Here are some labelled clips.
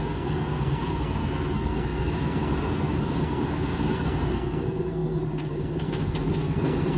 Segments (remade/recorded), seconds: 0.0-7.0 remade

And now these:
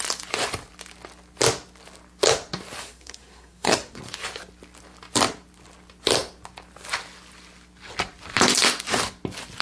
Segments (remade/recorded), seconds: 0.0-2.8 recorded; 2.8-4.0 remade; 4.0-9.6 recorded

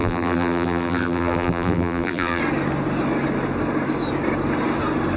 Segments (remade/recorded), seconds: 0.0-2.4 remade; 2.4-5.2 recorded

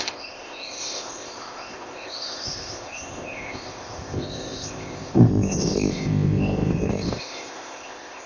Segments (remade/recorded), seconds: 0.0-8.3 remade

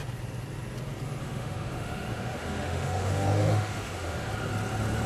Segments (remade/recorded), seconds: 0.0-1.2 recorded; 1.2-4.3 remade; 4.3-5.1 recorded

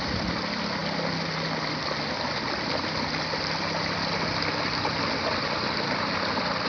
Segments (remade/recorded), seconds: 0.0-6.7 recorded